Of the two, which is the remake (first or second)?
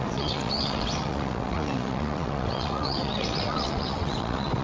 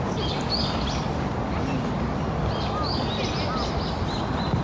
first